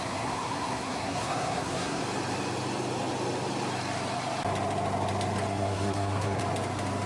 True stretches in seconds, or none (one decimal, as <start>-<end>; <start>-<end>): 2.0-5.5; 6.4-7.1